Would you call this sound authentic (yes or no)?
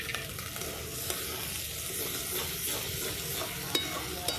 yes